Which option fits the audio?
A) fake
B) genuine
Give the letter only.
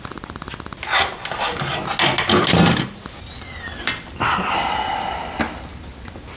B